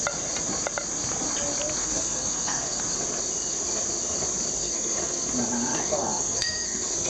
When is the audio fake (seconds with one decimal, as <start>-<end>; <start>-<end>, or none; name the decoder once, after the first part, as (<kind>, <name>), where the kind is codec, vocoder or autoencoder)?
1.8-2.8 (codec, SNAC); 4.6-5.3; 5.7-7.1